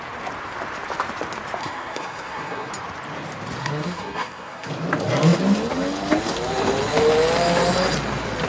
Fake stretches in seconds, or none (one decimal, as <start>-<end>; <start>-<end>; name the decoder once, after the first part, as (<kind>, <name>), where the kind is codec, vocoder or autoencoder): 1.6-2.7 (codec, SNAC); 3.6-4.7